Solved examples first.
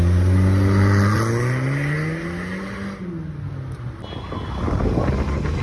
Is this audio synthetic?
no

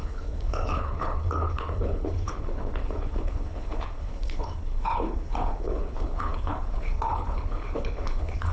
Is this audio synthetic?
yes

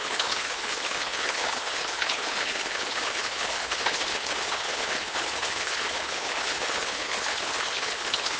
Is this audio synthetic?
yes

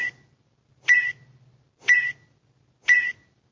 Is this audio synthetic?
no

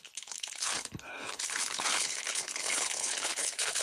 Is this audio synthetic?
yes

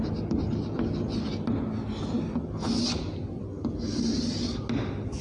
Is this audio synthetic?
no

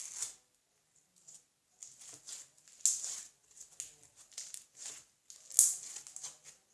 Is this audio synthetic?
no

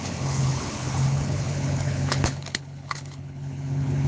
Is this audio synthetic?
yes